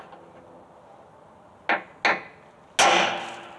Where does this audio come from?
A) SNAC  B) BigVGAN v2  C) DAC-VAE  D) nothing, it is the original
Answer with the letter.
D